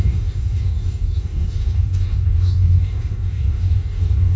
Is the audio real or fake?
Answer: fake